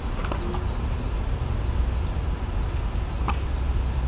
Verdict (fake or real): real